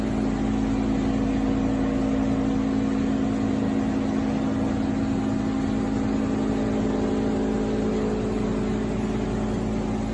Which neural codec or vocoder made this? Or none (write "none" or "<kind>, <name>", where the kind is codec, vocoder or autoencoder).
none